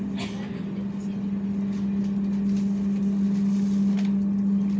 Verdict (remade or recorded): recorded